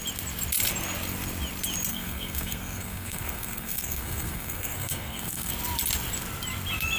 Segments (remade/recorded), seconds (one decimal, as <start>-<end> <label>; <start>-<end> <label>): 0.0-1.9 recorded; 1.9-5.5 remade; 5.5-7.0 recorded